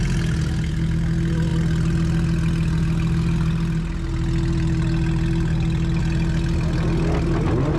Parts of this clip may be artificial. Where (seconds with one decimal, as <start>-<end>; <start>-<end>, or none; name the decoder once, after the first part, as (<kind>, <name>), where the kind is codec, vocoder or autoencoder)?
none